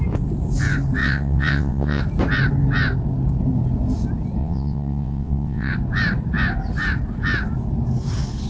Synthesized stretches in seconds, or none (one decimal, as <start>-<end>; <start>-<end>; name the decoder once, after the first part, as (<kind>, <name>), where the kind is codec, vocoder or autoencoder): 1.0-2.0 (vocoder, WaveNeXt); 4.4-5.7